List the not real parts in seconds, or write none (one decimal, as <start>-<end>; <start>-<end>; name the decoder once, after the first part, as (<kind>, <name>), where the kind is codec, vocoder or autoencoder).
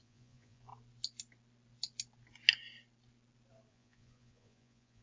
0.0-0.7 (vocoder, Vocos); 3.7-5.0